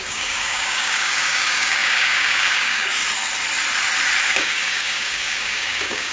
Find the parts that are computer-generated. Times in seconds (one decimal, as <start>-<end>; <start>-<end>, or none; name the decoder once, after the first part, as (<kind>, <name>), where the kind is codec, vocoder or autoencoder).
0.0-3.0 (codec, DAC); 4.2-6.1